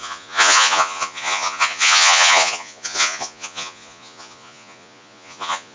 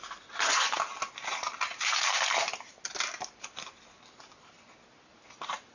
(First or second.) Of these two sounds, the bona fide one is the second